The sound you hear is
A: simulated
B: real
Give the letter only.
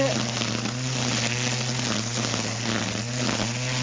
B